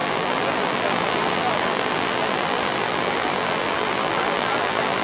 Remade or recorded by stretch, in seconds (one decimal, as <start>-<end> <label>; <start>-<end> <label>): 0.0-5.0 remade